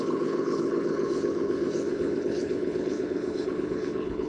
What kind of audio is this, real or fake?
fake